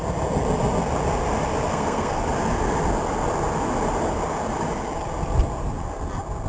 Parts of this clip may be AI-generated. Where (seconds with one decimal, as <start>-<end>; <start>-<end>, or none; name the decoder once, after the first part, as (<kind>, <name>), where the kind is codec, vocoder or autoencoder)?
1.7-2.2 (codec, SNAC)